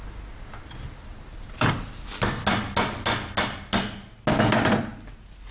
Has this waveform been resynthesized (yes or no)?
no